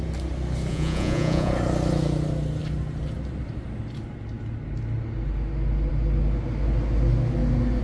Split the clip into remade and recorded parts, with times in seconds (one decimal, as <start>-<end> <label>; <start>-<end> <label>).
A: 0.0-0.7 recorded; 0.7-1.5 remade; 1.5-7.8 recorded